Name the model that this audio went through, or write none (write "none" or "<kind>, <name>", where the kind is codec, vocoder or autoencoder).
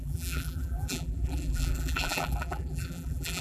vocoder, BigVGAN v2